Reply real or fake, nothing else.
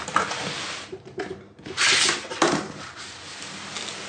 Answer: real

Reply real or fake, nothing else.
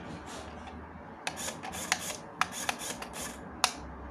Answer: real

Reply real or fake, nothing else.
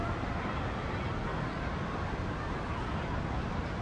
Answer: real